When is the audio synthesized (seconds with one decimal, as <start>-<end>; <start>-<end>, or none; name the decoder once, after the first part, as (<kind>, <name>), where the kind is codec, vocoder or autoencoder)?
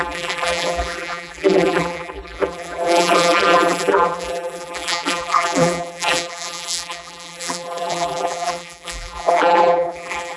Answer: 0.0-10.4 (vocoder, BigVGAN v2)